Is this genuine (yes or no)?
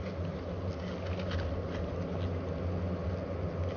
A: yes